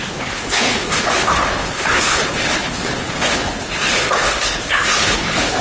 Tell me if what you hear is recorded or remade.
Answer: remade